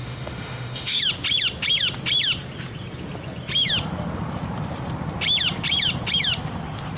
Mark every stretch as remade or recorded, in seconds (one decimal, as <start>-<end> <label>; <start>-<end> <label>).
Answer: 0.0-1.0 remade; 1.0-7.0 recorded